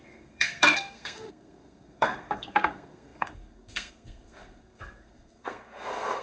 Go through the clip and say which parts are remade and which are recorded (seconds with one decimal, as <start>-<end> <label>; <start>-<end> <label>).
0.0-6.2 remade